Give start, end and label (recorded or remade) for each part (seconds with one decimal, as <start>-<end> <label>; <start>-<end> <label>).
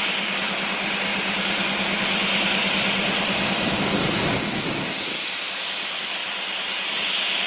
0.0-7.5 recorded